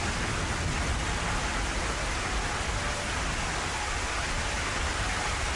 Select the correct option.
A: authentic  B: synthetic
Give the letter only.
A